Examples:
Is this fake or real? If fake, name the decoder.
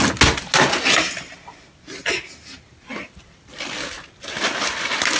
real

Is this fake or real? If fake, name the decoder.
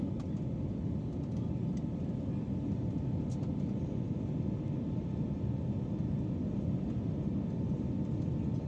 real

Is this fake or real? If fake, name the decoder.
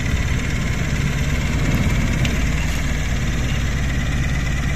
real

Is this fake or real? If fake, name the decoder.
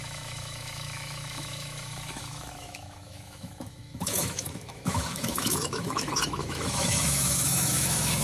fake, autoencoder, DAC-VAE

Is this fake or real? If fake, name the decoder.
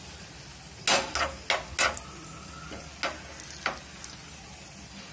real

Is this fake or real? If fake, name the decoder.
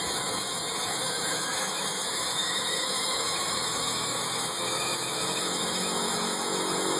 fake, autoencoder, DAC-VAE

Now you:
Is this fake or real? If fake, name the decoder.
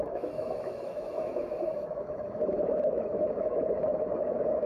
fake, autoencoder, DAC-VAE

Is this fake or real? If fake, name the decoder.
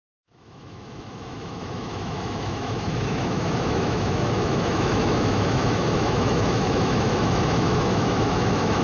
fake, autoencoder, DAC-VAE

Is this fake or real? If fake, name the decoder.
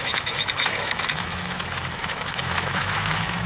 fake, autoencoder, DAC-VAE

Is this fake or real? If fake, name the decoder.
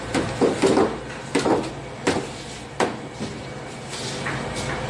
real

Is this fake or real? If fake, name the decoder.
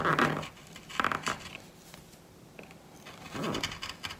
real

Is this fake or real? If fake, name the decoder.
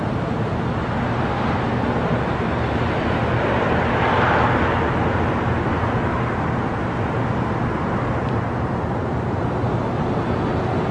real